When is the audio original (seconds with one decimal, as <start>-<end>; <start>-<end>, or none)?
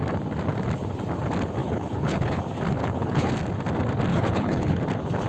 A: 0.0-1.6; 2.4-2.8; 3.3-4.1; 4.8-5.3